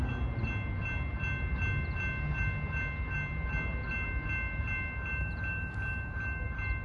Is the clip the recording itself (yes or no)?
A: yes